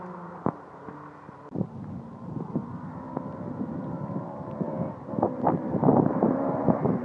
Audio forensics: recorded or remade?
remade